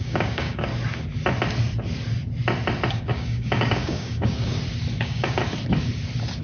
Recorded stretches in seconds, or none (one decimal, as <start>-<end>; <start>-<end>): 0.7-2.9; 4.5-5.0; 5.4-6.4